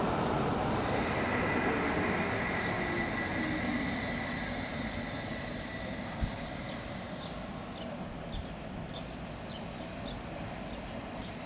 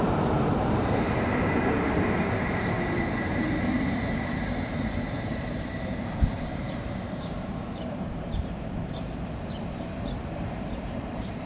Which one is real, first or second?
first